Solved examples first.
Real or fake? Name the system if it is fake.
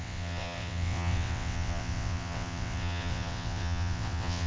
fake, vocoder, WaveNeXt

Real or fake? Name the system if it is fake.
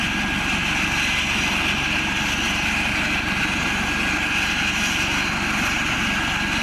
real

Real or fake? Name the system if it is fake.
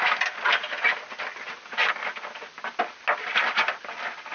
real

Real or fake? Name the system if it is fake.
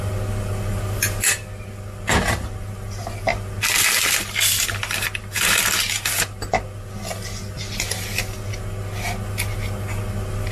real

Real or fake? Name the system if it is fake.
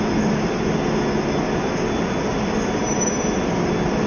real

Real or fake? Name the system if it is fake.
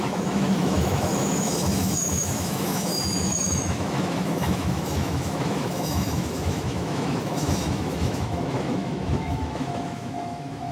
fake, autoencoder, DAC-VAE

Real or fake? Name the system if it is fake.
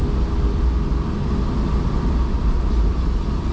real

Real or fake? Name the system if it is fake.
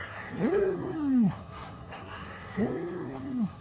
fake, codec, SNAC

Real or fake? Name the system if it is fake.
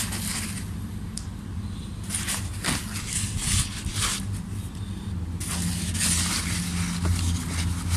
real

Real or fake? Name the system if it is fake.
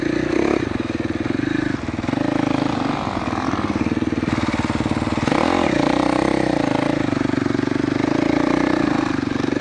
real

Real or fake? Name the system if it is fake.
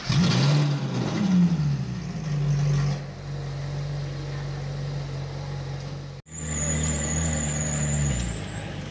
real